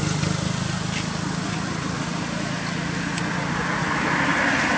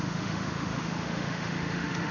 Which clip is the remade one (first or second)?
second